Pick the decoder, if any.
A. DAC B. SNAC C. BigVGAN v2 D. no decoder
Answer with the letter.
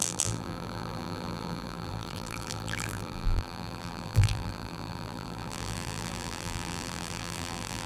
C